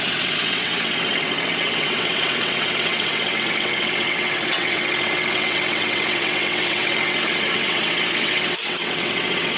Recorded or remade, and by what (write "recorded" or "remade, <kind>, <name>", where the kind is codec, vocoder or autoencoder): remade, vocoder, WaveNeXt